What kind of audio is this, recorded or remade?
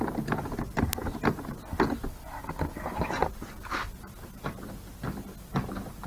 recorded